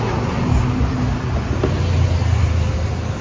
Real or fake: real